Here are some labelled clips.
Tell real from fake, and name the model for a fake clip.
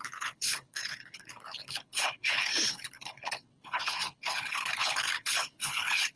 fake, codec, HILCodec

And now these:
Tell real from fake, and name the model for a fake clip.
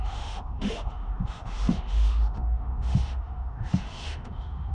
fake, autoencoder, DAC-VAE